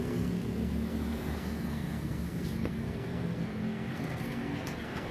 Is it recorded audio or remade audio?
remade